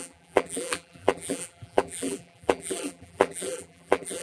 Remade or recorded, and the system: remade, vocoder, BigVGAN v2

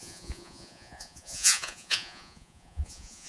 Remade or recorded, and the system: remade, vocoder, Vocos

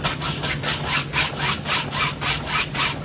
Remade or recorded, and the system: recorded